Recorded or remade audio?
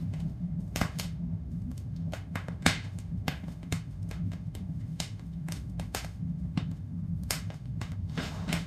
remade